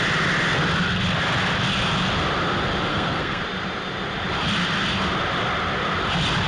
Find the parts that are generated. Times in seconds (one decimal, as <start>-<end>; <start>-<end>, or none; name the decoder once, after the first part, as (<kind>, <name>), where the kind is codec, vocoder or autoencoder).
2.9-3.4 (codec, SNAC)

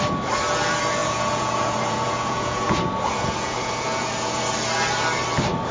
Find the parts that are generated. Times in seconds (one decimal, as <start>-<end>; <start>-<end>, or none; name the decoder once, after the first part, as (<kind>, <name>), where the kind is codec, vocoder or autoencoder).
1.0-4.4 (vocoder, Vocos)

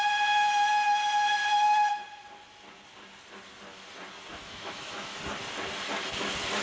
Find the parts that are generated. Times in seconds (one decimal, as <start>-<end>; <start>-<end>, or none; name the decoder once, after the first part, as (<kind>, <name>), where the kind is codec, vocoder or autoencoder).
4.3-5.2 (autoencoder, DAC-VAE)

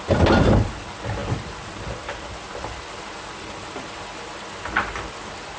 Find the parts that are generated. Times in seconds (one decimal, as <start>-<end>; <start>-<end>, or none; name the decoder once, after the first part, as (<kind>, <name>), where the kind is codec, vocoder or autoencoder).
none

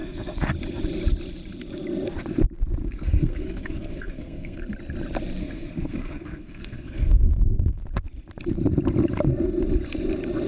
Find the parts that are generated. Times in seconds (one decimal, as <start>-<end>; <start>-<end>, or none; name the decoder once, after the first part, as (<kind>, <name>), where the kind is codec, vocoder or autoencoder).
0.0-0.5 (codec, SNAC); 2.8-4.6; 5.4-7.8

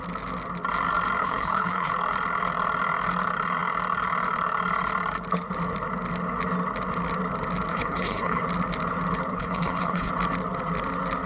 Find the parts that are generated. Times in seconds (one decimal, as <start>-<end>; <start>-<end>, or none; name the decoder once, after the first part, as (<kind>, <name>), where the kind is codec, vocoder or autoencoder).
1.2-1.9 (codec, HILCodec); 7.7-8.4; 9.3-10.1

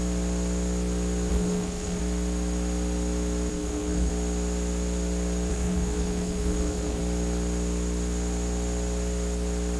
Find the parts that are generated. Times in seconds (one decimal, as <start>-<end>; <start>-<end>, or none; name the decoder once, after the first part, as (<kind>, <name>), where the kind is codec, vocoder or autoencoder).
1.3-2.0 (codec, SNAC); 3.5-4.1; 5.5-7.0